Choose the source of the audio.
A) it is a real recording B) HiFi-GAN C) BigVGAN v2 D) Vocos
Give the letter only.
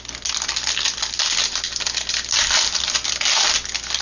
A